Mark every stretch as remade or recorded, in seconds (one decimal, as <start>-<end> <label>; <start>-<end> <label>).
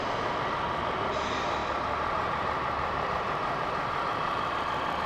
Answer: 0.0-1.6 recorded; 1.6-4.6 remade; 4.6-5.1 recorded